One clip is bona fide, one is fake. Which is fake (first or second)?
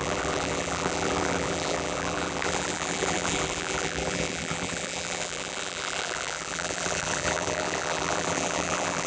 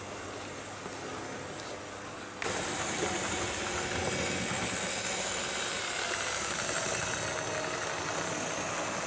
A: first